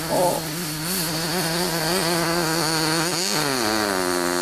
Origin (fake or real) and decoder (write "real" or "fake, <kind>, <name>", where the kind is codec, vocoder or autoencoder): real